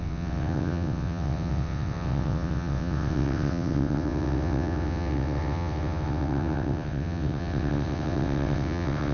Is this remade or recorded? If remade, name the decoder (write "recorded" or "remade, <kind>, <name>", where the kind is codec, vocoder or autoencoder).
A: remade, vocoder, WaveNeXt